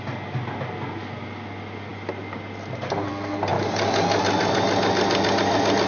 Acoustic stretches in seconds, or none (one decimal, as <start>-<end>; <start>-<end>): 0.0-5.9